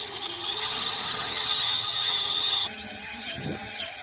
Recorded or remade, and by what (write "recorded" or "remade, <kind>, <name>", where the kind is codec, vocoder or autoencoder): remade, vocoder, HiFi-GAN